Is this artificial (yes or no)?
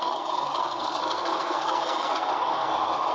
yes